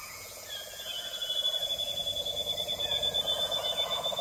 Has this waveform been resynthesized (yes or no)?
yes